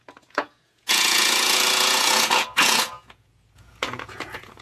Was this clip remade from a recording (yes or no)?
yes